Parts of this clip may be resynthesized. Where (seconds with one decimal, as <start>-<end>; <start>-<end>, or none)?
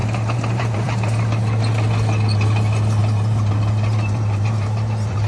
0.0-1.2; 3.0-5.3